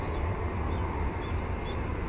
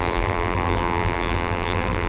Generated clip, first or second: second